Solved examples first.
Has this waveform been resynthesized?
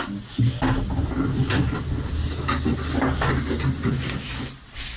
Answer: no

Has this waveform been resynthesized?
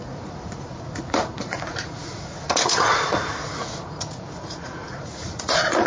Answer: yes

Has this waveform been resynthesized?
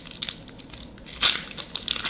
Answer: no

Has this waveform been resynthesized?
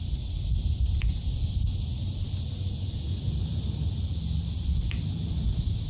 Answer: no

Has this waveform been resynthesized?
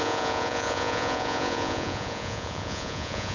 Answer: yes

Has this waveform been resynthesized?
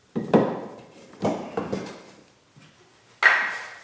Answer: no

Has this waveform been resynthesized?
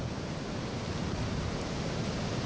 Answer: no